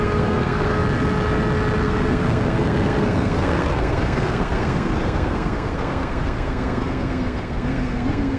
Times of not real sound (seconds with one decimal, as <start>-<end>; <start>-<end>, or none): 0.0-0.8; 1.8-8.4